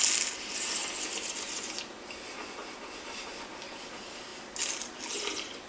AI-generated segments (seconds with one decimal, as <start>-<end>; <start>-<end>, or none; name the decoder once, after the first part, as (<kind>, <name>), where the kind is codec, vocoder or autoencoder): none